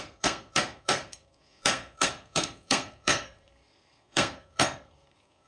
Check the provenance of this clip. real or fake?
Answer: fake